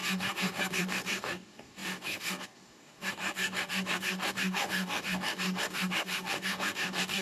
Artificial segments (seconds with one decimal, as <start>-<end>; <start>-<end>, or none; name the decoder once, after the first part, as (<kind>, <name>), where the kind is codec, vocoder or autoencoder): 0.0-7.2 (codec, DAC)